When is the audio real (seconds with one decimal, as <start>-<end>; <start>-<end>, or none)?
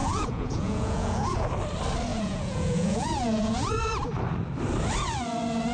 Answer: 1.5-2.1; 3.7-5.7